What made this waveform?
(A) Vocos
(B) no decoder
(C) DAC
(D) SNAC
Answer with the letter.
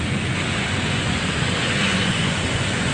A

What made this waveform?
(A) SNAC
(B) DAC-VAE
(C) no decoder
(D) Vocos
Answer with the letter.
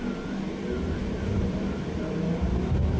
C